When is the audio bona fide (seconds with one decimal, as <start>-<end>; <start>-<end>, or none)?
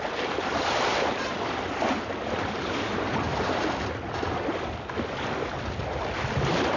0.0-6.8